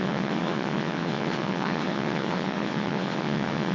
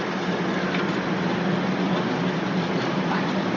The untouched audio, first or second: second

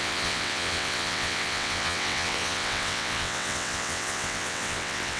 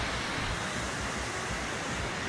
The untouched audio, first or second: second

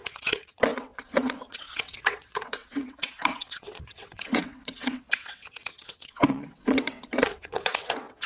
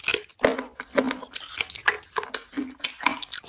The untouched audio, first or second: second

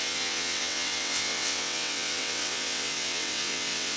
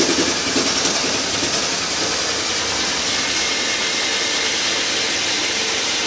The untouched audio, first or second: second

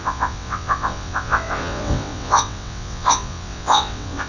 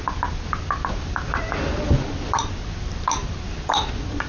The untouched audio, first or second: second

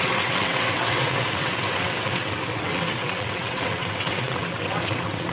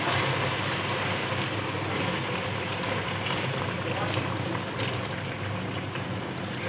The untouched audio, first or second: second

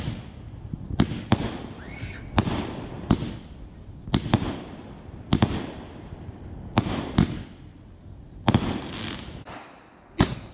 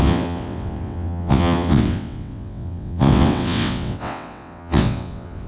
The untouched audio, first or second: first